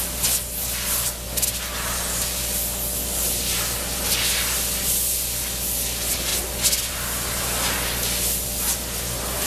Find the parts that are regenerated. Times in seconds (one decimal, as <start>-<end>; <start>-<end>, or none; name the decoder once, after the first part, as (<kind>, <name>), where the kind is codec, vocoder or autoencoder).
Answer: none